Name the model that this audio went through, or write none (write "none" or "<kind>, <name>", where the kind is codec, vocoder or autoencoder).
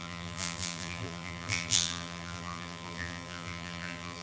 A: vocoder, BigVGAN v2